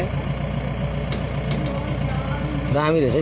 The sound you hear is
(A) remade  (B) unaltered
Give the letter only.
B